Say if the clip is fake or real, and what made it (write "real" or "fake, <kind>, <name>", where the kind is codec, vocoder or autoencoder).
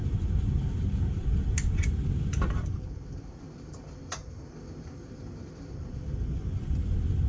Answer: real